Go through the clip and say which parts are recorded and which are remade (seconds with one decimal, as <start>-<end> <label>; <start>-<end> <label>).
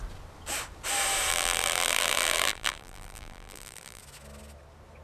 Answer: 0.0-1.3 recorded; 1.3-4.0 remade; 4.0-5.0 recorded